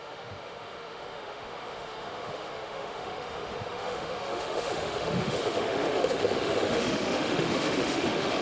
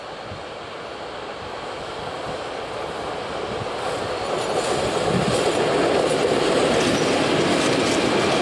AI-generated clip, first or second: first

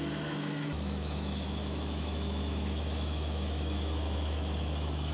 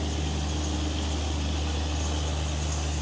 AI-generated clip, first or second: first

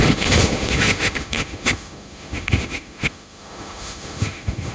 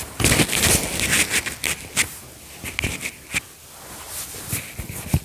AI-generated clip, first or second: first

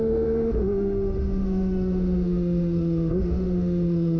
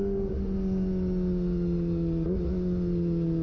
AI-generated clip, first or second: first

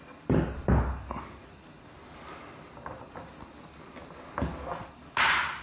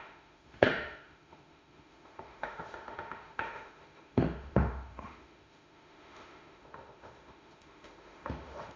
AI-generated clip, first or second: second